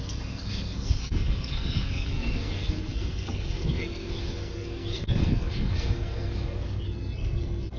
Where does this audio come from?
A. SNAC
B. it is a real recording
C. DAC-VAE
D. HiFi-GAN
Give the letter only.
A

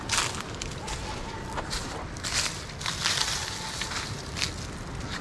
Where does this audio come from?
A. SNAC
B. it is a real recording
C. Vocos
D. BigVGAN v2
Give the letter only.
B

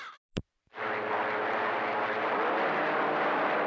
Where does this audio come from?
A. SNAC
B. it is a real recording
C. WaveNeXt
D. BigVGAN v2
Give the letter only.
D